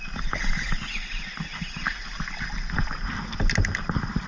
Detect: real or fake real